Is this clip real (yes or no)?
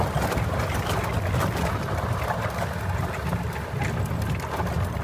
yes